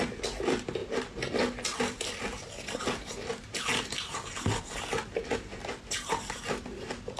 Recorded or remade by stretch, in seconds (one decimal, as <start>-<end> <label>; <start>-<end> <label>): 0.0-0.8 remade; 0.8-1.8 recorded; 1.8-7.2 remade